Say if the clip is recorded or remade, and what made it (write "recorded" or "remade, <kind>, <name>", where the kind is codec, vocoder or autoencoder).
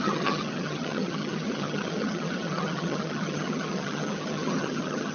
remade, vocoder, HiFi-GAN